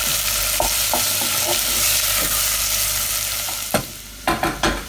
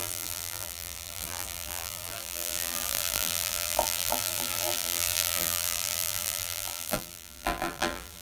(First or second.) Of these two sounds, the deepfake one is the second